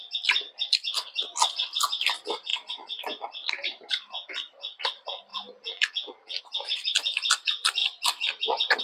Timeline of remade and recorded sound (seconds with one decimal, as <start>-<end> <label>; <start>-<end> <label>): 0.0-5.3 recorded; 5.3-6.4 remade; 6.4-8.8 recorded